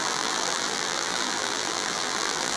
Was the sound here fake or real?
fake